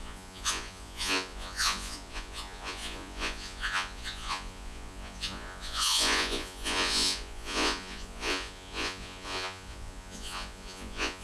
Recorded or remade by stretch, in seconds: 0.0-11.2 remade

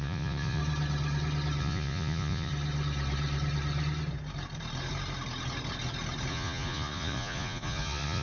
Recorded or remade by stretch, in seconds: 0.0-0.6 remade; 0.6-1.6 recorded; 1.6-2.5 remade; 2.5-6.3 recorded; 6.3-8.2 remade

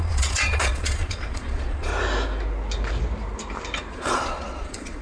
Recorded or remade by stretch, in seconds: 0.0-1.9 remade; 1.9-3.9 recorded; 3.9-5.0 remade

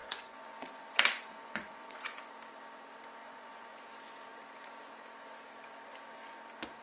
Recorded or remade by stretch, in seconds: 0.0-2.3 remade; 2.3-3.2 recorded; 3.2-3.9 remade; 3.9-6.8 recorded